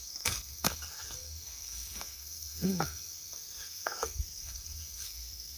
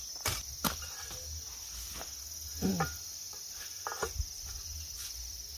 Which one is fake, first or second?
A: first